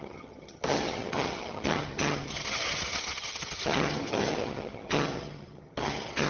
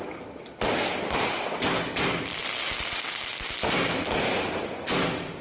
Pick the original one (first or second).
second